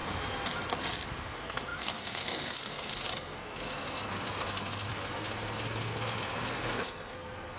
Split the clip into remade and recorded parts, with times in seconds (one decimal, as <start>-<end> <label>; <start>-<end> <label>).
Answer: 0.0-1.2 recorded; 1.2-7.6 remade